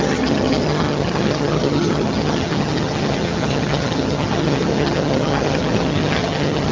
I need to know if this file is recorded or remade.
remade